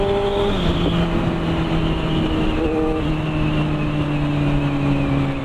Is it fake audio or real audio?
real